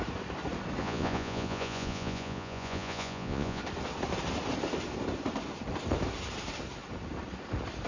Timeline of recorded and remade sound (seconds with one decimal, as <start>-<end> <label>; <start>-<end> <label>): 0.0-0.8 recorded; 0.8-3.6 remade; 3.6-7.9 recorded